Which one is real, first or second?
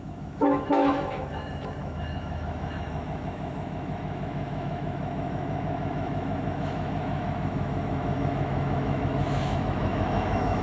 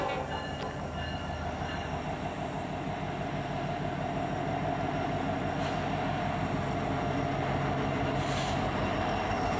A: second